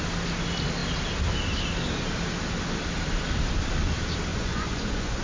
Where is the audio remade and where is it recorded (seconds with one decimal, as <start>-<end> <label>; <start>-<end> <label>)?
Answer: 0.0-4.3 recorded; 4.3-5.2 remade